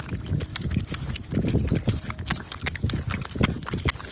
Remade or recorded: recorded